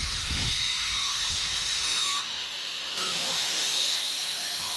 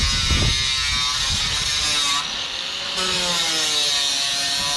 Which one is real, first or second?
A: second